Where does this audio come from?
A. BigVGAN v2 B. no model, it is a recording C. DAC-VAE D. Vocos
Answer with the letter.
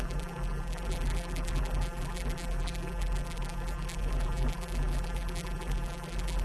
A